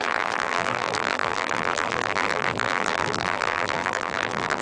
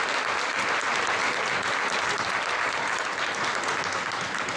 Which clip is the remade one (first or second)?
first